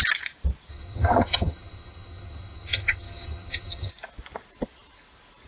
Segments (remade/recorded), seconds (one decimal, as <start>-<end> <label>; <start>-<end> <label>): 0.0-0.7 recorded; 0.7-3.9 remade; 3.9-5.5 recorded